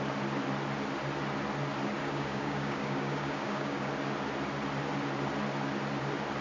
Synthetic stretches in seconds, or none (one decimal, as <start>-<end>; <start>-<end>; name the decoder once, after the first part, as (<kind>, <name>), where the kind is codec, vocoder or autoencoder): 2.0-3.9 (codec, DAC)